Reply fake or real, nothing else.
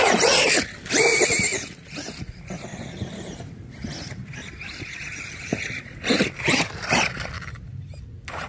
real